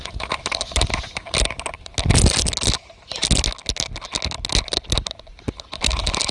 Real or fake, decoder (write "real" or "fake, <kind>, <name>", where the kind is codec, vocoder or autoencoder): real